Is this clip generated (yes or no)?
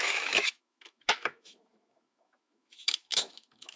yes